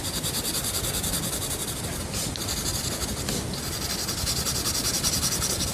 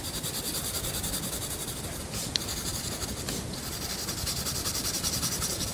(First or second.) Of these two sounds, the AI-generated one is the second